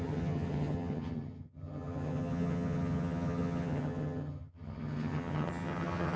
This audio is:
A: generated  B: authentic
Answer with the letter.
A